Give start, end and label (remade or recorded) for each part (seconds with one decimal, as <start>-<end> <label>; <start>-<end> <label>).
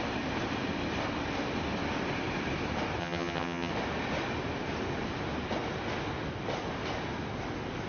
0.0-3.0 recorded; 3.0-3.7 remade; 3.7-7.9 recorded